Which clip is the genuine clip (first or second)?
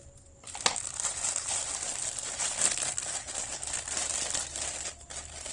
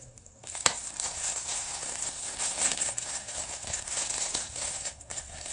first